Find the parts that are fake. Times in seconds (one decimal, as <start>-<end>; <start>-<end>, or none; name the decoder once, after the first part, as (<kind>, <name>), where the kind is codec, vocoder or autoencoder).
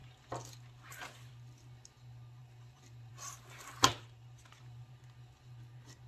2.4-3.1 (vocoder, BigVGAN v2); 3.9-4.6